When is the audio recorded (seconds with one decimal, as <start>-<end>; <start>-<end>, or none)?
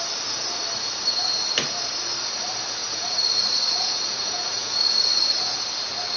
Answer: 0.0-2.8; 5.6-6.2